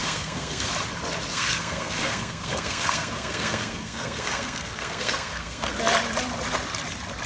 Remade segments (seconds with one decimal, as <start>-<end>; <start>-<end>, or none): 0.0-0.7; 1.3-5.7